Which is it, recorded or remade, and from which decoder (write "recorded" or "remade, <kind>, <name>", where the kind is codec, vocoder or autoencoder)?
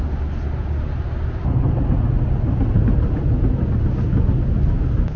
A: recorded